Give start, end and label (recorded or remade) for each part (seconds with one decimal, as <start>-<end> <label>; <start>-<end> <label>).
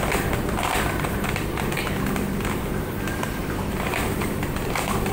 0.0-3.4 recorded; 3.4-4.3 remade; 4.3-5.1 recorded